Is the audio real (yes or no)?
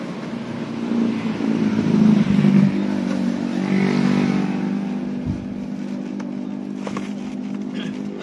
yes